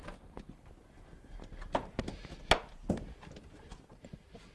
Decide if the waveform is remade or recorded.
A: recorded